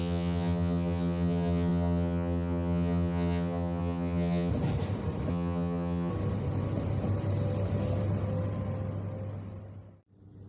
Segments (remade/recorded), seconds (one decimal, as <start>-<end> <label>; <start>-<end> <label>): 0.0-4.5 remade; 4.5-5.3 recorded; 5.3-6.1 remade; 6.1-10.5 recorded